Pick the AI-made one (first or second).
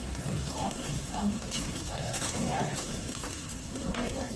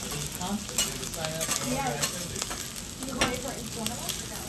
first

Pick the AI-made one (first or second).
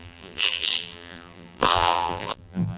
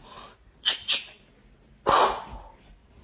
first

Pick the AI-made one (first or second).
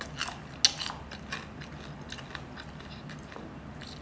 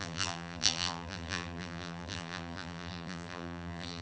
second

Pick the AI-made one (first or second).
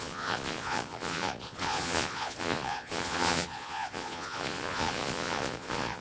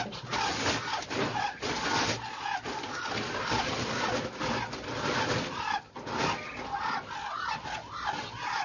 first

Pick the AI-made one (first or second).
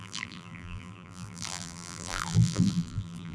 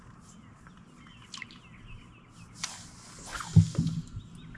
first